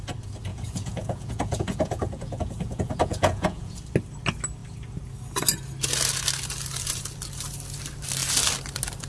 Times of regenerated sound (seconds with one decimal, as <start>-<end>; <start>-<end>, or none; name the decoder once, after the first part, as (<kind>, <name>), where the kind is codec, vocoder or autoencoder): 0.5-3.8 (vocoder, Vocos)